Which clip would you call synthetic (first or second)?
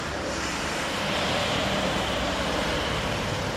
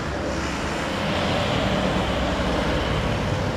first